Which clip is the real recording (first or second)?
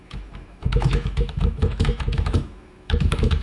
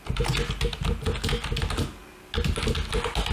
second